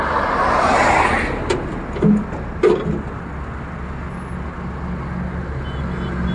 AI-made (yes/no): no